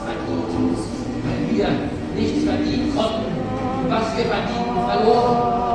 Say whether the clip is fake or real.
real